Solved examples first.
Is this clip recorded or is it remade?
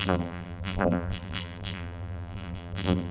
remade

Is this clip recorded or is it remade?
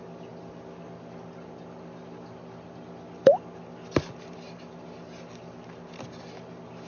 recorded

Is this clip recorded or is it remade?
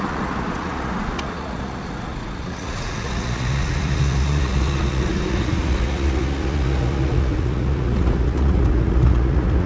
remade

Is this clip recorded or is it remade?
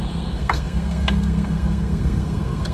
remade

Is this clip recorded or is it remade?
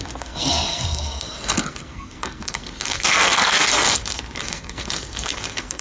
remade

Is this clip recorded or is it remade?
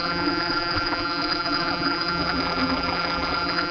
remade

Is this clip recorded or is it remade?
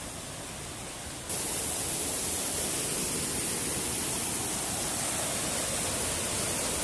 recorded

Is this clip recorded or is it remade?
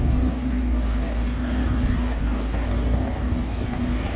remade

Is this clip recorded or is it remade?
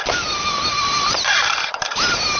recorded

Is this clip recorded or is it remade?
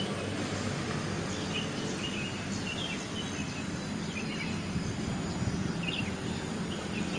recorded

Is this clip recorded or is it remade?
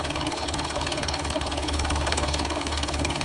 remade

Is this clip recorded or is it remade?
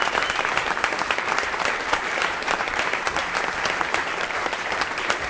remade